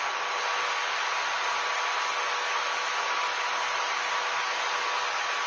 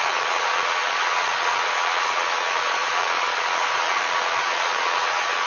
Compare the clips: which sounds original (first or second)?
first